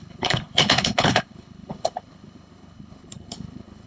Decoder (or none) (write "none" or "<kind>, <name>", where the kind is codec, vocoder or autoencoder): codec, HILCodec